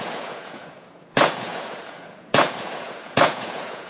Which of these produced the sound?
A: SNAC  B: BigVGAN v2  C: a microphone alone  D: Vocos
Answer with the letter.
D